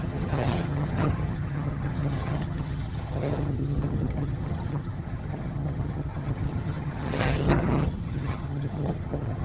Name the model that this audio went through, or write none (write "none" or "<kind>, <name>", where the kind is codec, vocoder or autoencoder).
vocoder, HiFi-GAN